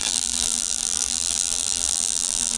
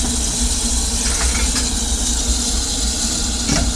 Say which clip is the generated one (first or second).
first